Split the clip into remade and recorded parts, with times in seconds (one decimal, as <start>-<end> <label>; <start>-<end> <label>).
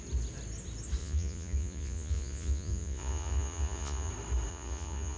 0.0-1.0 recorded; 1.0-4.1 remade; 4.1-4.5 recorded; 4.5-5.2 remade